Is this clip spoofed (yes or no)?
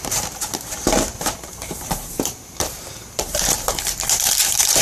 yes